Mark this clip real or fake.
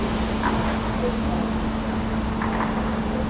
real